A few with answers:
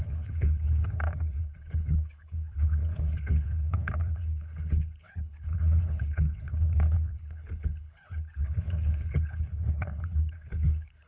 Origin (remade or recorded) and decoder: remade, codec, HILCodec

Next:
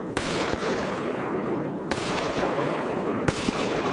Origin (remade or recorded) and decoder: remade, codec, HILCodec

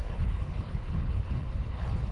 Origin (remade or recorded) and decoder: remade, codec, HILCodec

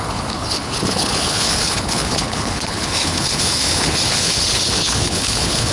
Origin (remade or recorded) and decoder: remade, codec, HILCodec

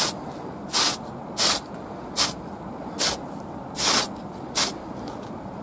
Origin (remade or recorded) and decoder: recorded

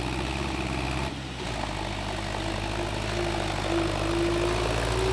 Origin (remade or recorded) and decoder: recorded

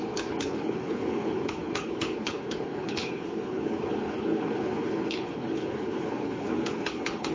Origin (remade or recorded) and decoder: remade, codec, HILCodec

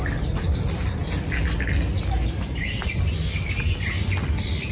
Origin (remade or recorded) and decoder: recorded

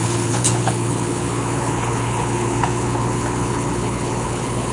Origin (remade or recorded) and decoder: remade, codec, HILCodec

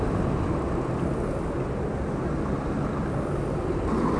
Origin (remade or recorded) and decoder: recorded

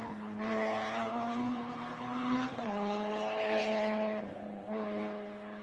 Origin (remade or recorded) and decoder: remade, codec, HILCodec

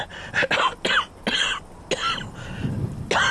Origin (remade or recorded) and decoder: recorded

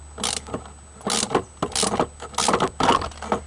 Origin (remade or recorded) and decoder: recorded